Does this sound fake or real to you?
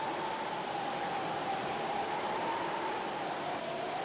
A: real